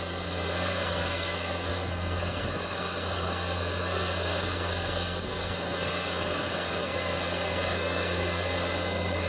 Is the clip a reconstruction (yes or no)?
yes